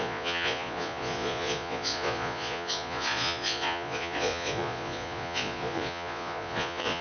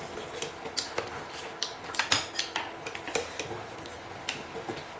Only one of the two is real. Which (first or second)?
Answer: second